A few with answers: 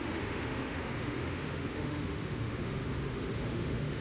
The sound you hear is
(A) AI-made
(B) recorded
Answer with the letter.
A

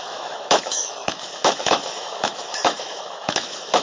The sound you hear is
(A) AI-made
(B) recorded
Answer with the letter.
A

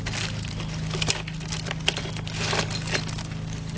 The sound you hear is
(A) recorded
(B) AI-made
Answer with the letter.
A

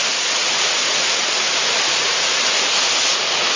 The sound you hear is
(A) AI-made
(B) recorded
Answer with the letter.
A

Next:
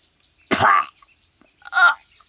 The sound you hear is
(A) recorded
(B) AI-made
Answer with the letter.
A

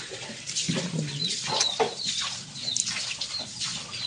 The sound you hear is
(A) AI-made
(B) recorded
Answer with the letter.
B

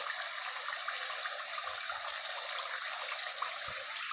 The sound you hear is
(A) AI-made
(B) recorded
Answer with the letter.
B